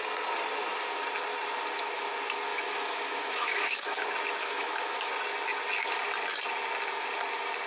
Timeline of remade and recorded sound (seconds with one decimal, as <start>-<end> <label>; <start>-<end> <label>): 0.0-2.5 recorded; 2.5-4.0 remade; 4.0-4.4 recorded; 4.4-5.1 remade; 5.1-7.7 recorded